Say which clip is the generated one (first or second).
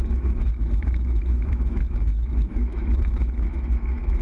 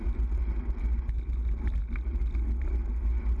first